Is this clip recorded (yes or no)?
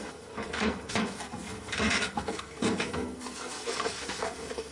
no